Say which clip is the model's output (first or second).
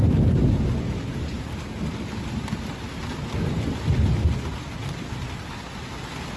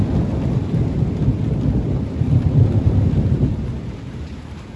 second